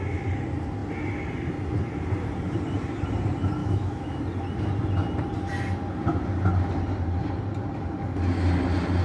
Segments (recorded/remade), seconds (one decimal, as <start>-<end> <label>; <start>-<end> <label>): 0.0-3.6 recorded; 3.6-4.2 remade; 4.2-9.0 recorded